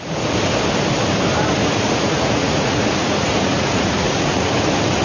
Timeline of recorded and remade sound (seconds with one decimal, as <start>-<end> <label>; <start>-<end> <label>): 0.0-1.6 recorded; 1.6-4.5 remade; 4.5-5.0 recorded